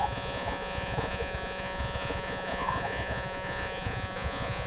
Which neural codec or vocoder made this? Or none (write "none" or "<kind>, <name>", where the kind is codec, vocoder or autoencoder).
vocoder, Vocos